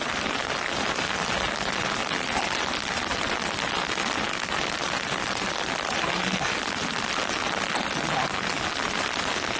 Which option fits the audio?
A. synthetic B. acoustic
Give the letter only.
B